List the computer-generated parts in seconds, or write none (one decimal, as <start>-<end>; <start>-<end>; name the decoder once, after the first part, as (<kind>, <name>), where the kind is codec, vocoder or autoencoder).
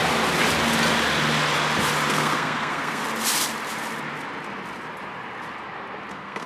2.1-3.0 (codec, SNAC); 6.1-6.5